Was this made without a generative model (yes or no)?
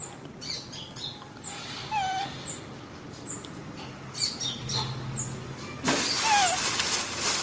yes